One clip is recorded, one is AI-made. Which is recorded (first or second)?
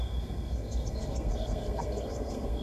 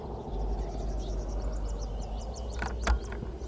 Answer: second